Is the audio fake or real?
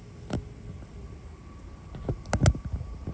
real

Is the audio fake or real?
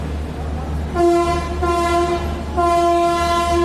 real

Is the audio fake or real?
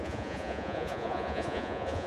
fake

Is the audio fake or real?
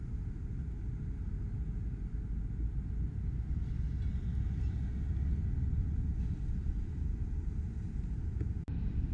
real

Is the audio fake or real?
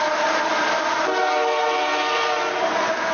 real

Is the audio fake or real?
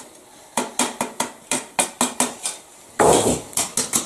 real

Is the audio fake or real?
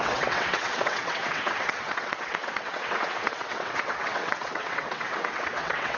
fake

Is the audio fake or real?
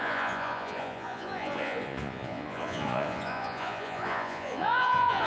fake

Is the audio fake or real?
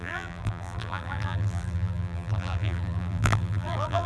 fake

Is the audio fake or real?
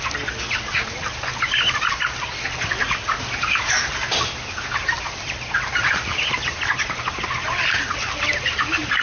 real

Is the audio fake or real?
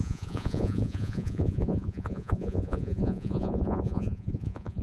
fake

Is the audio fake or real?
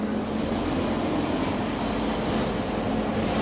real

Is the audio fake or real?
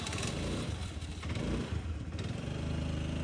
fake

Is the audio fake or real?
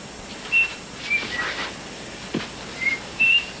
real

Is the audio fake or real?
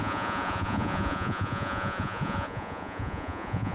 fake